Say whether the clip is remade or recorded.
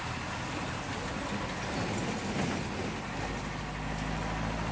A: recorded